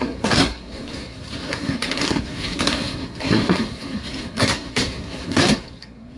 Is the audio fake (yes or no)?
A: yes